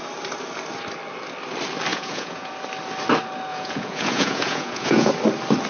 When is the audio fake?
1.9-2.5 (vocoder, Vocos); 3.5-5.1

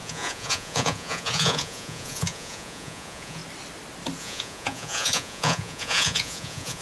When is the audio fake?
0.0-3.4 (vocoder, Vocos); 4.2-6.8

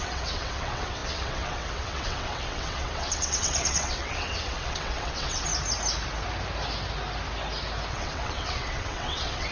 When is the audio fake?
0.0-5.5 (vocoder, WaveNeXt); 7.9-9.5

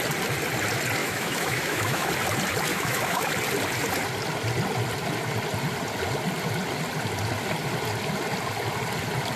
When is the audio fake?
1.0-2.1 (autoencoder, DAC-VAE); 2.7-3.3

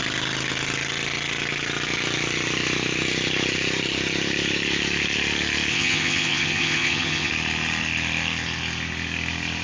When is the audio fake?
5.7-7.3 (vocoder, HiFi-GAN)

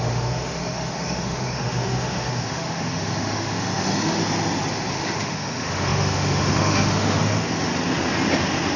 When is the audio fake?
0.0-4.2 (autoencoder, DAC-VAE); 4.9-7.7

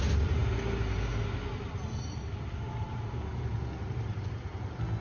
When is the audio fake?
none

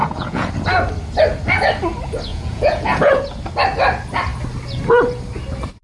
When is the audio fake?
0.0-0.5 (vocoder, Vocos); 2.3-3.1